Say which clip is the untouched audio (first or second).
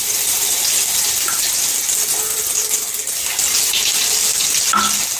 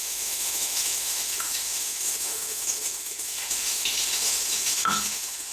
first